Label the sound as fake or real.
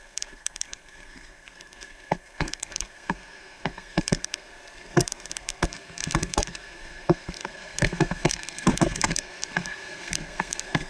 fake